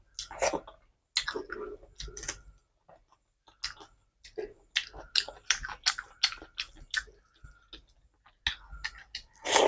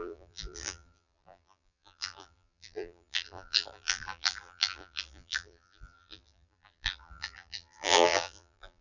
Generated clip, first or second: second